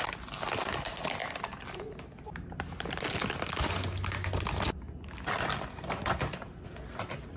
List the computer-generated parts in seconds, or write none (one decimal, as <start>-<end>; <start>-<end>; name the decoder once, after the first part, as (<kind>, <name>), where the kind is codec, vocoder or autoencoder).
none